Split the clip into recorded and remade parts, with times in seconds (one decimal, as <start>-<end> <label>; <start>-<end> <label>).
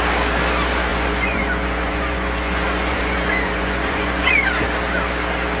0.0-0.9 recorded; 0.9-4.3 remade; 4.3-5.6 recorded